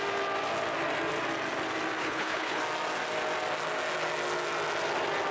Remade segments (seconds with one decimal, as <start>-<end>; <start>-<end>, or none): 2.0-2.6